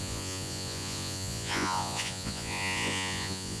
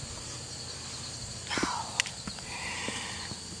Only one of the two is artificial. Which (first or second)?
first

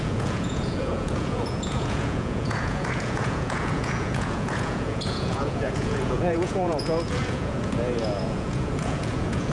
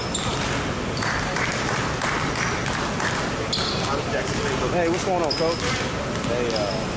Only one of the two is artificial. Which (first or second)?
first